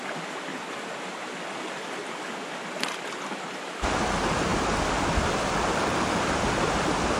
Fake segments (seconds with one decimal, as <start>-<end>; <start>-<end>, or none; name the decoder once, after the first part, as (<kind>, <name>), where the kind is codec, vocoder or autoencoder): 0.5-1.3 (vocoder, BigVGAN v2)